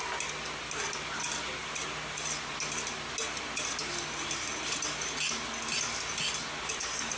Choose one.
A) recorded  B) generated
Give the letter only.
A